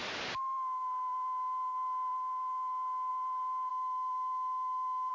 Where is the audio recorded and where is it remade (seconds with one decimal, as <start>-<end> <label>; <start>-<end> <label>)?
0.0-3.7 recorded; 3.7-5.1 remade